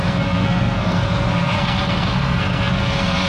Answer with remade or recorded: remade